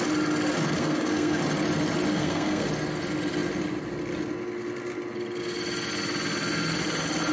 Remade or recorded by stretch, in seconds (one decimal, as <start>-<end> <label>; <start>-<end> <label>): 0.0-0.8 recorded; 0.8-1.4 remade; 1.4-2.1 recorded; 2.1-2.7 remade; 2.7-7.3 recorded